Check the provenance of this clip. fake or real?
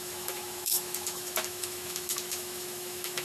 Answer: fake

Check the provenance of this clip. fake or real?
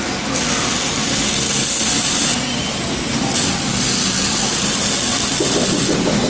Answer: real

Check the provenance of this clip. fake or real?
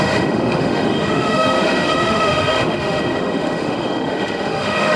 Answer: fake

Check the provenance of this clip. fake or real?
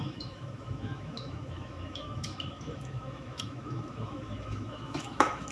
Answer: fake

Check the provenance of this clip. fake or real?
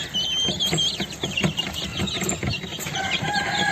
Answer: real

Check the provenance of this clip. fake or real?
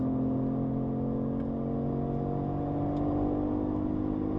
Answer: real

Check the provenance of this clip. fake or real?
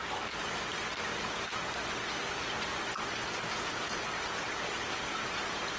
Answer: real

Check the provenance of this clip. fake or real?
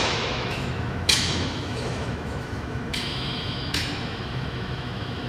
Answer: fake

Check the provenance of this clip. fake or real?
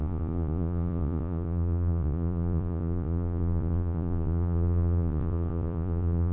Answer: fake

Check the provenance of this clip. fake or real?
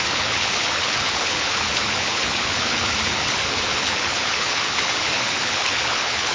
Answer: fake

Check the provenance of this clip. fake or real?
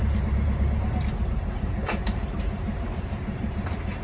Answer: fake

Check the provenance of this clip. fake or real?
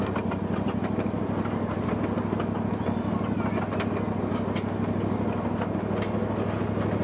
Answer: real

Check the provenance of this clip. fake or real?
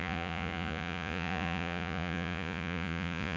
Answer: fake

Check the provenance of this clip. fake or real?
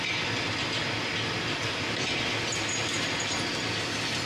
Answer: real